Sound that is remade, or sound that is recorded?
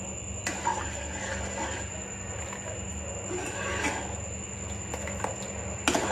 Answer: recorded